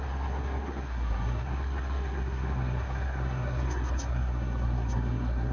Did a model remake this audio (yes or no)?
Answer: yes